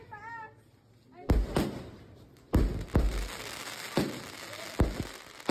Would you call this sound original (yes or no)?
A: yes